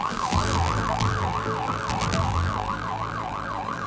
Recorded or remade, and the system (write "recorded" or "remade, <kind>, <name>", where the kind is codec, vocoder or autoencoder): remade, vocoder, BigVGAN v2